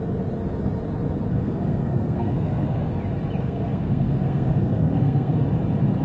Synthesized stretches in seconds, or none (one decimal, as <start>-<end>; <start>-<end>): 1.3-2.9; 3.4-5.4